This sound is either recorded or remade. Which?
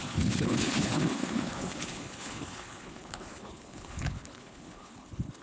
remade